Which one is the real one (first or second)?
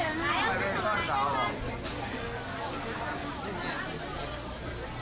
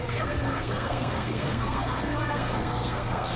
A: first